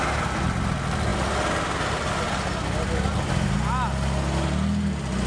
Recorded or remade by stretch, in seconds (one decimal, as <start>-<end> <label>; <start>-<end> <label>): 0.0-5.3 recorded